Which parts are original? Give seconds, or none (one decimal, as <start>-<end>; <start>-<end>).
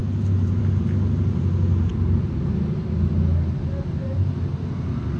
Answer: 0.0-5.2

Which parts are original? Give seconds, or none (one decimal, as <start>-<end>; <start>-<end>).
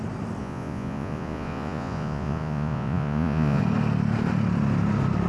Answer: 0.0-0.4; 3.6-5.3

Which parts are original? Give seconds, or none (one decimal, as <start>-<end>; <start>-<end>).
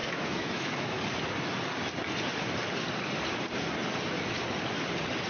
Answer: 1.0-5.3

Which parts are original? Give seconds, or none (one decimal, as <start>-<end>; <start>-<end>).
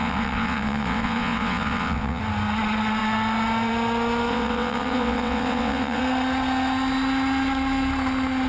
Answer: 2.2-4.3; 6.0-8.5